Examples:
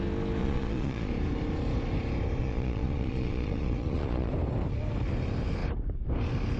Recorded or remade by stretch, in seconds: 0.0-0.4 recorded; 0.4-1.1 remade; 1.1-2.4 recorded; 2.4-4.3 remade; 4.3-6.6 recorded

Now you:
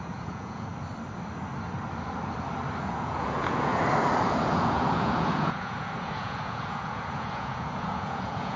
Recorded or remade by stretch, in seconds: 0.0-0.7 remade; 0.7-2.8 recorded; 2.8-3.7 remade; 3.7-4.3 recorded; 4.3-8.6 remade

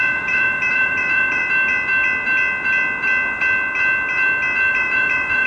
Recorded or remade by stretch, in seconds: 0.0-1.4 remade; 1.4-4.7 recorded; 4.7-5.5 remade